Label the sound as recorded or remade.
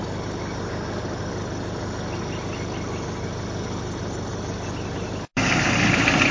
recorded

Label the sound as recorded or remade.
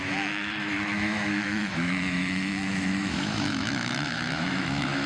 remade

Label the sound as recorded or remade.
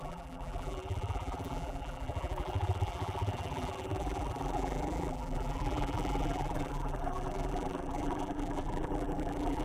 remade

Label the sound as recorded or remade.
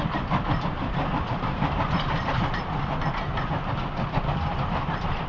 remade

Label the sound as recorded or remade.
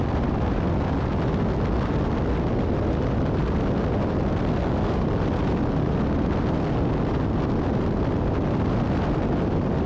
recorded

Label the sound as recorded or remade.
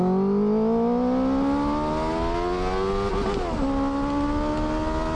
recorded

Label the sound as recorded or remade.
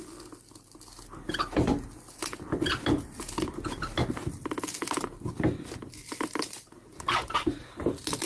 recorded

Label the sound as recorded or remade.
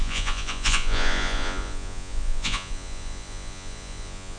remade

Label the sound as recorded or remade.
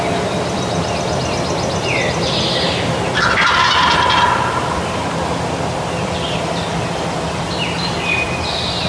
recorded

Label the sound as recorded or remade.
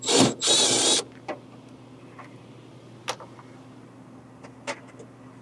recorded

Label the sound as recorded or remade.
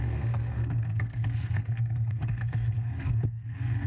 remade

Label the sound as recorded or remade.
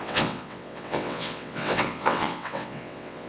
remade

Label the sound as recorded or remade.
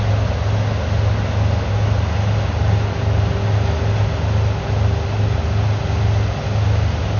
recorded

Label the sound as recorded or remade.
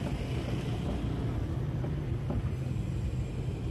recorded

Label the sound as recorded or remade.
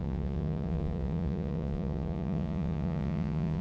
remade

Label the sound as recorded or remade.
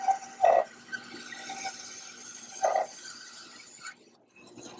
recorded